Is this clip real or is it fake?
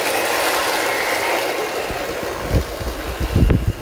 real